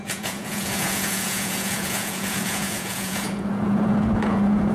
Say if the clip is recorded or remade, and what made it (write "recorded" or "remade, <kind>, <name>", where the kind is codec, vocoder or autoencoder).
remade, vocoder, Vocos